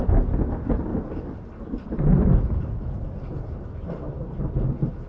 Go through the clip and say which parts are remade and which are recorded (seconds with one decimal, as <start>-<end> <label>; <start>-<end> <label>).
0.0-5.1 recorded